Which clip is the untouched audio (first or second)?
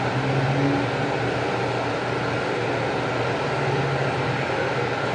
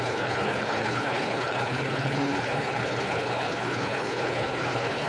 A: first